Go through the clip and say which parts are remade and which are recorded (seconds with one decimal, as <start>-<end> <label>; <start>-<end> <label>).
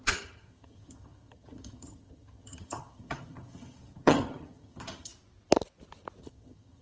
0.0-5.1 remade; 5.1-6.2 recorded; 6.2-6.8 remade